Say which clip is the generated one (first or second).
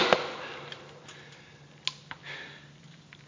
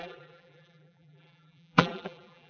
second